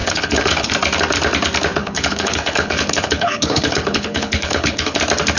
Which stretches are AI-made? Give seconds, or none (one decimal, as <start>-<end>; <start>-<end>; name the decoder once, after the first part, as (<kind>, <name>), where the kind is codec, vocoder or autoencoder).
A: 0.0-0.7 (codec, HILCodec); 1.8-5.0